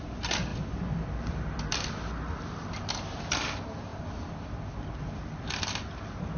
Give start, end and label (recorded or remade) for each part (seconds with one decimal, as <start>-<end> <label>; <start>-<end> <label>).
0.0-6.4 recorded